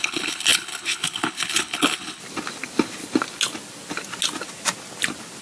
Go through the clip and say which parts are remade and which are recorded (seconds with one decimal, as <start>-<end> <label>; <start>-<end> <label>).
0.0-2.2 remade; 2.2-5.4 recorded